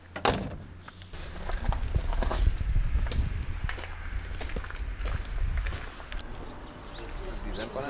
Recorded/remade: recorded